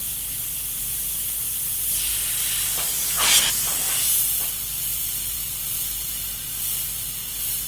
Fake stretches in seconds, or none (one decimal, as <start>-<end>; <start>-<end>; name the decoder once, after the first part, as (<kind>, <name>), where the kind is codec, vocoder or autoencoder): 0.0-0.8 (vocoder, BigVGAN v2); 2.1-3.2; 4.9-5.5